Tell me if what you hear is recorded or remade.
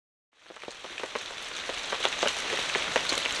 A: recorded